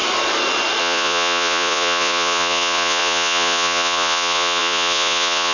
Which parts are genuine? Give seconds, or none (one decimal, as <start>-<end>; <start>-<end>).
0.0-0.8